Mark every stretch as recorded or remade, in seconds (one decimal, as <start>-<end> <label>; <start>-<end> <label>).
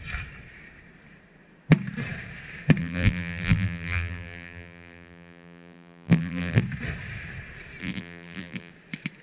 0.0-2.8 recorded; 2.8-6.6 remade; 6.6-7.8 recorded; 7.8-8.7 remade; 8.7-9.2 recorded